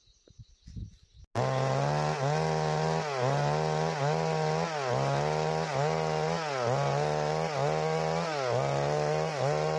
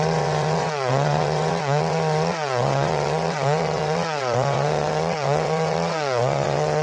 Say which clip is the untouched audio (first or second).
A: first